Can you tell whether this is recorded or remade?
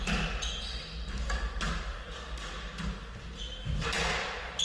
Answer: recorded